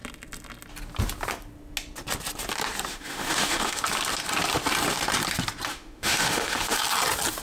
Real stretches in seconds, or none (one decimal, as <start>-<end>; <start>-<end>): 0.0-2.9; 3.8-5.7; 6.8-7.4